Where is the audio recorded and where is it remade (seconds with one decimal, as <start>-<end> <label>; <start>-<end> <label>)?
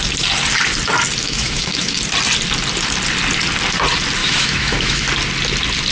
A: 0.0-1.2 recorded; 1.2-2.0 remade; 2.0-4.2 recorded; 4.2-5.1 remade; 5.1-5.9 recorded